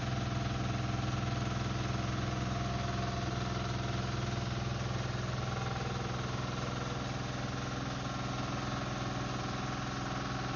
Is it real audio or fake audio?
real